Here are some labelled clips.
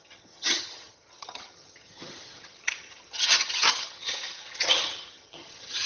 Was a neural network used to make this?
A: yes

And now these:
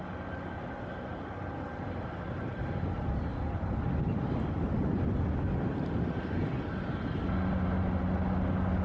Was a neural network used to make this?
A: no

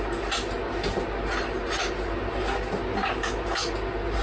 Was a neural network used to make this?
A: no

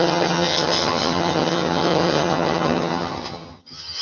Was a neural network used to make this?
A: yes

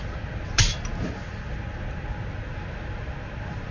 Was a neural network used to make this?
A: no